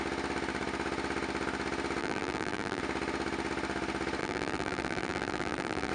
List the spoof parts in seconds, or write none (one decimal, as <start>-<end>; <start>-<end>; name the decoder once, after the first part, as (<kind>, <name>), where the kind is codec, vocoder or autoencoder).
2.0-2.8 (vocoder, BigVGAN v2); 4.2-5.9